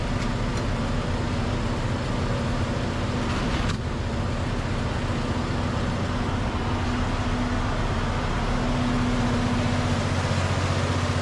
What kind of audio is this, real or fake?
real